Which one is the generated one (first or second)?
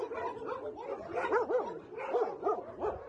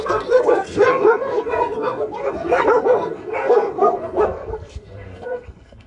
second